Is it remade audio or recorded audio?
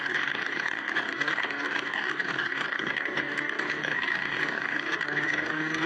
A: remade